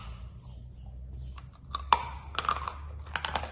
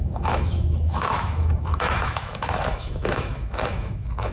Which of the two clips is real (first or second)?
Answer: first